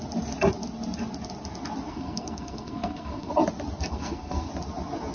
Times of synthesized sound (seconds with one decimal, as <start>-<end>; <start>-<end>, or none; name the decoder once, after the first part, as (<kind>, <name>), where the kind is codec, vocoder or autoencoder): 1.9-3.3 (codec, SNAC); 3.9-4.5